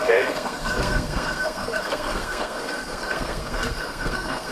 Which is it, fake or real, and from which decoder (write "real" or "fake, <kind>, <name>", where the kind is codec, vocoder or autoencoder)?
fake, codec, SNAC